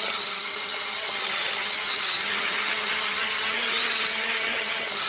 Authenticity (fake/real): fake